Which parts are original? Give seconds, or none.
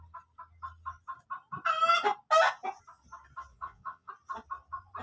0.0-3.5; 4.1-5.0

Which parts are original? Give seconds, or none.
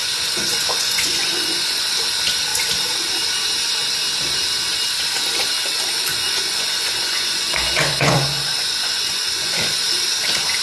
2.0-6.1; 9.7-10.6